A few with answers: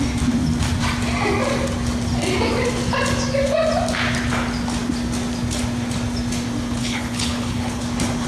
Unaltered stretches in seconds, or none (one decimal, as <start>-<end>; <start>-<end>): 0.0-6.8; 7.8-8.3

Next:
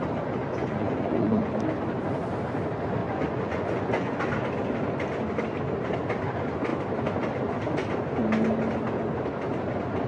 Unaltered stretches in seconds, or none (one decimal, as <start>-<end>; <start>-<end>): 0.0-0.6; 1.5-3.0; 4.2-10.1

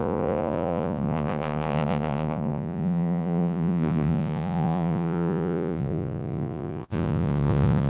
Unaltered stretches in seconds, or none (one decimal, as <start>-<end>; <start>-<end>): none

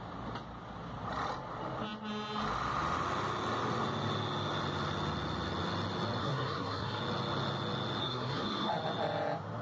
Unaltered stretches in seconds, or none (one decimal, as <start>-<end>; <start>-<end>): 0.0-6.2; 7.0-8.0; 8.7-9.6

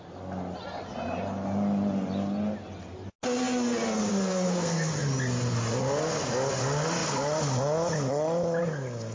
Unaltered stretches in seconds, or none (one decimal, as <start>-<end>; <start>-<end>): 0.0-4.1; 4.9-9.1